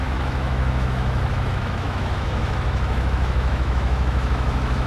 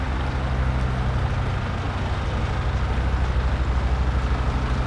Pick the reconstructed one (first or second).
first